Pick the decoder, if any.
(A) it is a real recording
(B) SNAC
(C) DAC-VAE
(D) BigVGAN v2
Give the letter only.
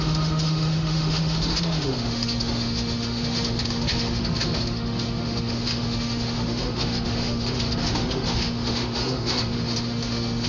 C